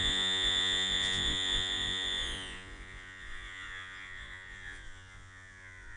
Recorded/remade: remade